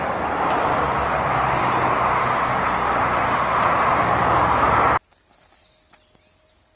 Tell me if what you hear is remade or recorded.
recorded